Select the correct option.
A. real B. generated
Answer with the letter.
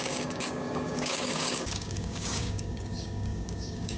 B